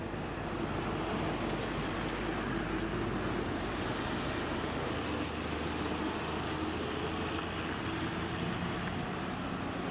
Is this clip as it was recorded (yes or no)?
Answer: yes